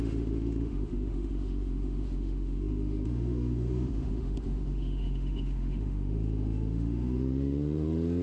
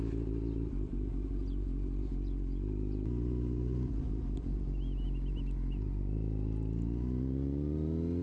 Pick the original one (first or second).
second